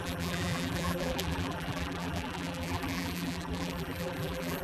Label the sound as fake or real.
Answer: fake